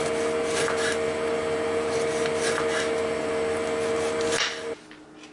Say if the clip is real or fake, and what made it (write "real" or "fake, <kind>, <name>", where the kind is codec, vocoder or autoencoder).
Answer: real